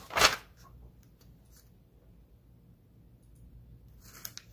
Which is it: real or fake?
real